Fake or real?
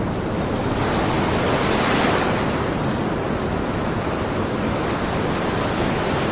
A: real